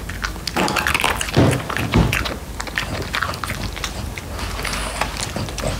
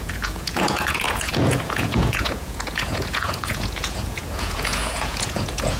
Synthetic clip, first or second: second